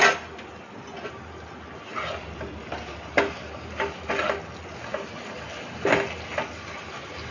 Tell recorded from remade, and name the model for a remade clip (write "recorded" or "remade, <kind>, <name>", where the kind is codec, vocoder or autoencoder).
recorded